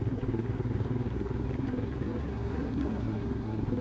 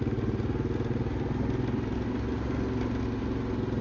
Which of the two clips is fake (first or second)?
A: first